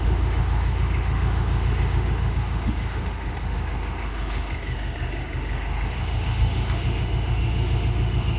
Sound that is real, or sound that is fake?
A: fake